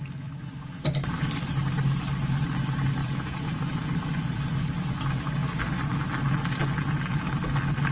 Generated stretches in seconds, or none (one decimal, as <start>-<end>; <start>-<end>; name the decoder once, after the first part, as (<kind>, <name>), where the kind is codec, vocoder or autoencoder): 3.0-3.6 (vocoder, Vocos)